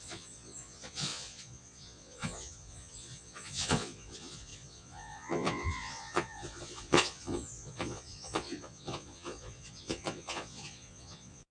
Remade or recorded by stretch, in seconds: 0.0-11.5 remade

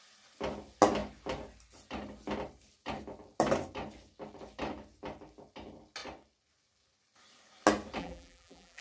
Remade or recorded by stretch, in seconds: 0.0-8.0 recorded; 8.0-8.8 remade

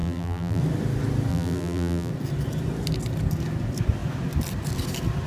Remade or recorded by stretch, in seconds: 0.0-0.6 remade; 0.6-1.3 recorded; 1.3-2.1 remade; 2.1-5.3 recorded